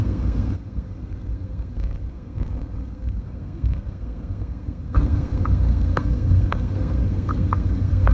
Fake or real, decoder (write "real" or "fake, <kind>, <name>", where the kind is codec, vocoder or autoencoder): fake, codec, SNAC